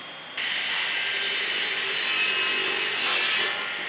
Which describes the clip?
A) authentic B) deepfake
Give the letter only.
A